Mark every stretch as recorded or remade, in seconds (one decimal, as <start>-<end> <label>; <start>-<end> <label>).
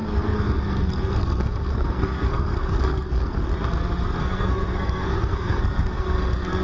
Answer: 0.0-3.5 remade; 3.5-4.2 recorded; 4.2-6.6 remade